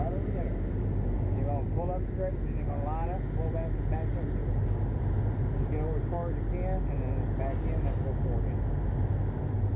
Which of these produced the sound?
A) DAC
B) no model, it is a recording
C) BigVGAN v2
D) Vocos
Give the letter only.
B